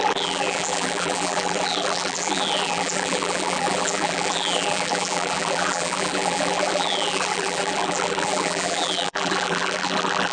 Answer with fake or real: fake